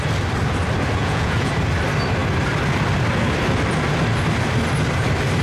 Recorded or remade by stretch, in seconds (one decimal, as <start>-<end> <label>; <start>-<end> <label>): 0.0-1.0 recorded; 1.0-1.5 remade; 1.5-5.4 recorded

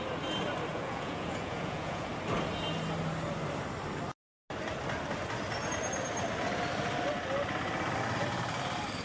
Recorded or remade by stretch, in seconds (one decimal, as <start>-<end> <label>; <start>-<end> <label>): 0.0-0.7 recorded; 0.7-2.1 remade; 2.1-9.0 recorded

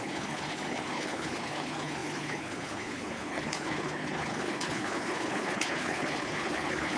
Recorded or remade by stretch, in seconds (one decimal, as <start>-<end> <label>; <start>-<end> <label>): 0.0-7.0 remade

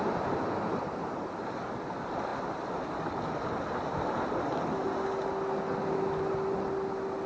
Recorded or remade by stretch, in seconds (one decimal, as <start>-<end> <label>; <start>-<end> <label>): 0.0-7.3 recorded

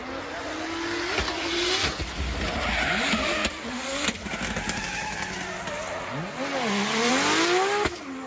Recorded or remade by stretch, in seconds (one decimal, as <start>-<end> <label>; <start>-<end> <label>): 0.0-8.3 recorded

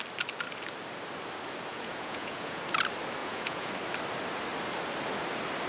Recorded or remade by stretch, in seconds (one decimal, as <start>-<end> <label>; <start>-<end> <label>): 0.0-1.7 recorded; 1.7-2.6 remade; 2.6-3.2 recorded; 3.2-3.7 remade; 3.7-5.7 recorded